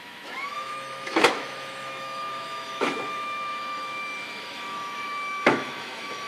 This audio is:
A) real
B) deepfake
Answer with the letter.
B